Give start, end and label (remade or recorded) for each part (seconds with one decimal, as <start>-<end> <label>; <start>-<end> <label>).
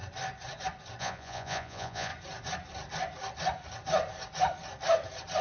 0.0-1.0 recorded; 1.0-2.1 remade; 2.1-5.4 recorded